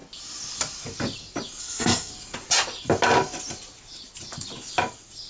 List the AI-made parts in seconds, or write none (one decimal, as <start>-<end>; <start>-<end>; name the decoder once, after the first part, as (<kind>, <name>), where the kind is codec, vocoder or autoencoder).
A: 1.6-2.1 (codec, SNAC)